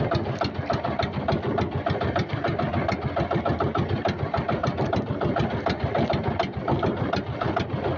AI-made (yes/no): no